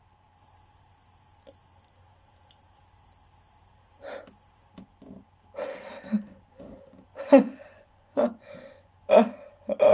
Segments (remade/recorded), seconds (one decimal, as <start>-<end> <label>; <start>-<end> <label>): 0.0-7.1 recorded; 7.1-9.1 remade; 9.1-9.9 recorded